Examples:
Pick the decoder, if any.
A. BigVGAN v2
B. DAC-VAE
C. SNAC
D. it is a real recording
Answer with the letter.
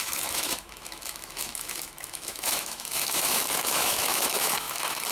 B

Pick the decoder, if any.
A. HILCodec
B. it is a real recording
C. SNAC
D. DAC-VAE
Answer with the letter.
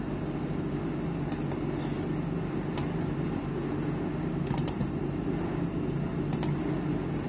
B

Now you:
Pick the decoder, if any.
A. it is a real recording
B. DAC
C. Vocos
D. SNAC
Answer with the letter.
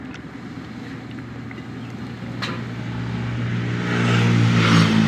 A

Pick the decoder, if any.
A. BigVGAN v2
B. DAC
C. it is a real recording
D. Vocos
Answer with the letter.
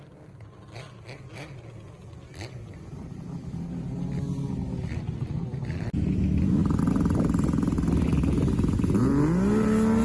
C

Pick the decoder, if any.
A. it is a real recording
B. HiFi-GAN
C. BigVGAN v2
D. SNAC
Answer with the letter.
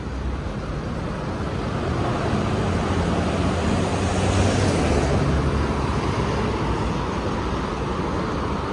A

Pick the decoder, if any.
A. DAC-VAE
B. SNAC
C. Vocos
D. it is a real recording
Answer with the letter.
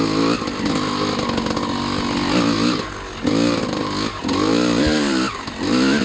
D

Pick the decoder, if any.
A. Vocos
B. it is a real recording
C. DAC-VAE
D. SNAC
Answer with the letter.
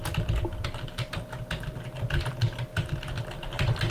B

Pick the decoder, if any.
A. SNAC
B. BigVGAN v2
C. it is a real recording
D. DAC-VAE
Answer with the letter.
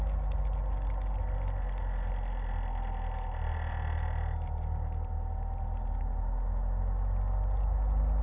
C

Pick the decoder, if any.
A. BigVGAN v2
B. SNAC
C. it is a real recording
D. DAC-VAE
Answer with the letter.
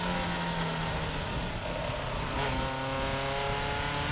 C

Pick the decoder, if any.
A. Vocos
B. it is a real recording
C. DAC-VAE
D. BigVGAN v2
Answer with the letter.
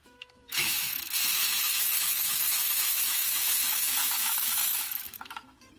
C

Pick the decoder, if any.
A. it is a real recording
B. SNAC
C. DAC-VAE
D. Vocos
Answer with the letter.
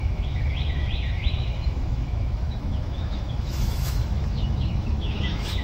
C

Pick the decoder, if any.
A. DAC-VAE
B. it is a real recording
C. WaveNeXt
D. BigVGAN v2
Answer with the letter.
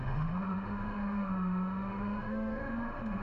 A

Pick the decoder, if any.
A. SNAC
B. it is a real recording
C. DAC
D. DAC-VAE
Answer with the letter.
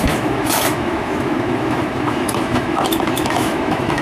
D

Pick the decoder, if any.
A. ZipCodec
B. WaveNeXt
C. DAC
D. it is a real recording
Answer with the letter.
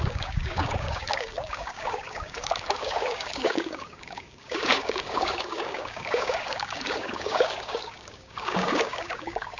C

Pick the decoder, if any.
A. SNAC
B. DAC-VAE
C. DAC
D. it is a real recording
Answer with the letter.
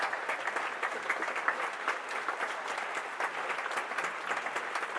D